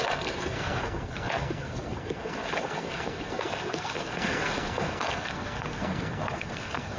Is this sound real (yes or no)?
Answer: no